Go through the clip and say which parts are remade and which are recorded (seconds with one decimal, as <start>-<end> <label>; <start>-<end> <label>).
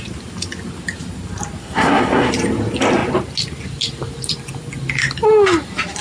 0.0-1.6 recorded; 1.6-2.3 remade; 2.3-6.0 recorded